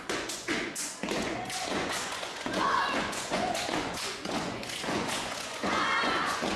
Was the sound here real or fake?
fake